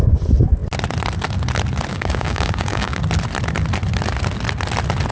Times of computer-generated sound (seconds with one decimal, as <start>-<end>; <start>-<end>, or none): 1.9-3.0